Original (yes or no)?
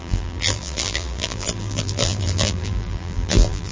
no